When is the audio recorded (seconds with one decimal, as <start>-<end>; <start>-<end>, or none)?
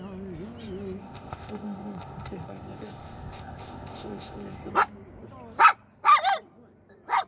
0.0-1.0; 4.7-7.3